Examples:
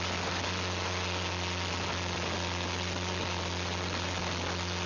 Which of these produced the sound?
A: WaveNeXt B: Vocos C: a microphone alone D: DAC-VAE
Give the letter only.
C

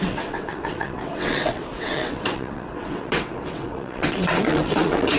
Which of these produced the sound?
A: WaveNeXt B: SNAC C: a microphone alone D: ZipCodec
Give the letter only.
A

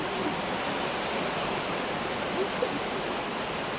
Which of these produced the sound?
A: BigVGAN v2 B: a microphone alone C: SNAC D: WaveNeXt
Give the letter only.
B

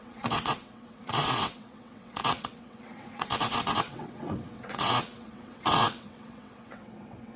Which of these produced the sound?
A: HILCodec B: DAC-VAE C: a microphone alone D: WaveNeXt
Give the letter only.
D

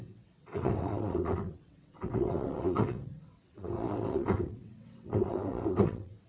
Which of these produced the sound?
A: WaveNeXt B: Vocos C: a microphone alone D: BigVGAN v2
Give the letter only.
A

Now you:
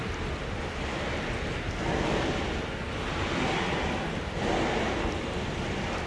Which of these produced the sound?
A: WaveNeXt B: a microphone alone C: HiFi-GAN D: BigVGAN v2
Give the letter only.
B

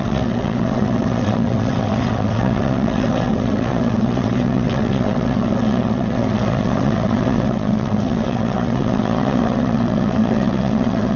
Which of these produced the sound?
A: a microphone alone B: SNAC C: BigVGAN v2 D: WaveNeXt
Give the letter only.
D